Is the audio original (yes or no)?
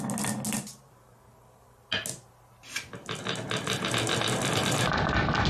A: yes